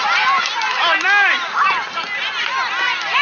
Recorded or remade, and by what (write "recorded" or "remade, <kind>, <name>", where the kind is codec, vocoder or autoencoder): recorded